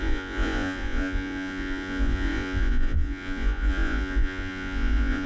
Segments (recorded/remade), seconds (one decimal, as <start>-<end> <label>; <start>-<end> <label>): 0.0-5.3 remade